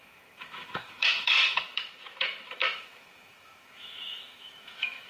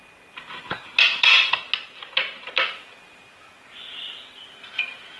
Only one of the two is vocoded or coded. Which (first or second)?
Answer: first